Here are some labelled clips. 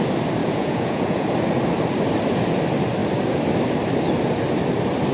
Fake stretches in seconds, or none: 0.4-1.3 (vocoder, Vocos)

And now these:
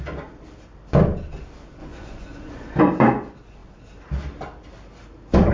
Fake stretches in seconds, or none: 1.8-2.8 (vocoder, Vocos)

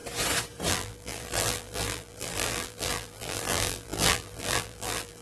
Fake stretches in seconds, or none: 0.7-5.2 (vocoder, BigVGAN v2)

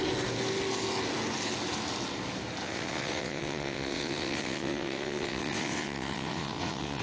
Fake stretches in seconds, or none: 2.6-7.0 (vocoder, WaveNeXt)